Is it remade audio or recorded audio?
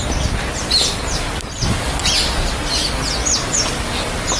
recorded